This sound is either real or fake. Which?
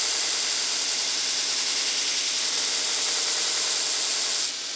real